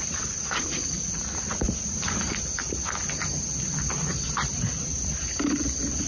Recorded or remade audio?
recorded